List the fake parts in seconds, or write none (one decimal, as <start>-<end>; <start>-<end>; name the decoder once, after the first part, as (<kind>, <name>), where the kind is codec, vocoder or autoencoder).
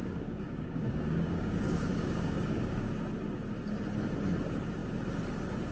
0.0-2.9 (codec, DAC)